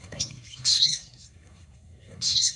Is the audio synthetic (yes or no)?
yes